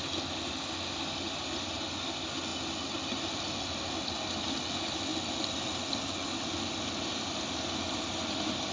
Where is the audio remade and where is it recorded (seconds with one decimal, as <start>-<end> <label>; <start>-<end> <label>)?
0.0-8.7 recorded